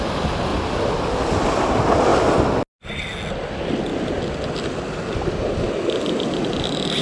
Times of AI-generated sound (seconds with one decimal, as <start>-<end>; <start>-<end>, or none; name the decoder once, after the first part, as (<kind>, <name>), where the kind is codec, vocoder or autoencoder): none